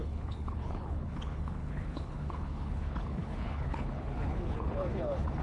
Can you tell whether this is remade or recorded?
remade